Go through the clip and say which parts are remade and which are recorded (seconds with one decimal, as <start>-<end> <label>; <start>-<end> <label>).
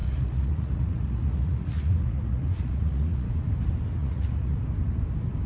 0.0-3.3 remade; 3.3-4.0 recorded; 4.0-4.6 remade; 4.6-5.5 recorded